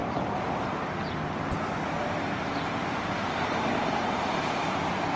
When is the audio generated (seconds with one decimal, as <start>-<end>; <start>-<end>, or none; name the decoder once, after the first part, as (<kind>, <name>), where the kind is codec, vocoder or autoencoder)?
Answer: none